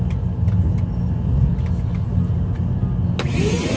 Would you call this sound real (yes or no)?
yes